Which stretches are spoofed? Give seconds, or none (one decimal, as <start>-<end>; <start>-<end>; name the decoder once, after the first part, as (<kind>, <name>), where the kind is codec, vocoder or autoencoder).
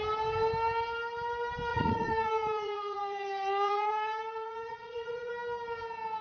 1.7-5.3 (vocoder, Vocos)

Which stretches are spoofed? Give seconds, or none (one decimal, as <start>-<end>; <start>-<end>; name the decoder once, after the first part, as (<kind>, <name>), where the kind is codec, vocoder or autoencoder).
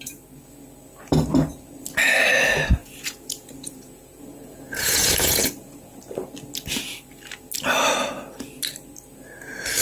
2.8-6.0 (vocoder, Vocos)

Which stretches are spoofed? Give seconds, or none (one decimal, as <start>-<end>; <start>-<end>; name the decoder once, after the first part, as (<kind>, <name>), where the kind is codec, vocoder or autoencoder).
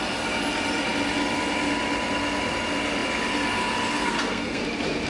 4.0-4.6 (codec, SNAC)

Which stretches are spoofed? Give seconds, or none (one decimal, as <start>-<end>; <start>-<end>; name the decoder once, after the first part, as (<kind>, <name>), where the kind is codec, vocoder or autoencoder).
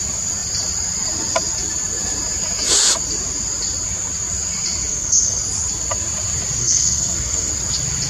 4.9-5.4 (codec, SNAC); 6.6-7.5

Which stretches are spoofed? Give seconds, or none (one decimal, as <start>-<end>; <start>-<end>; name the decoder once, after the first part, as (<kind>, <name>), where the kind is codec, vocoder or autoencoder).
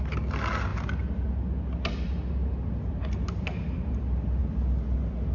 none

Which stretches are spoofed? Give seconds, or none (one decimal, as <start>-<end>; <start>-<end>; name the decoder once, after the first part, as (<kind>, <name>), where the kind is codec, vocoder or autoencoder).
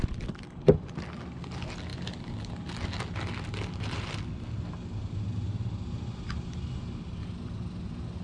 none